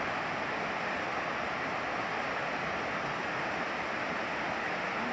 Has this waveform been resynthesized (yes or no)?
no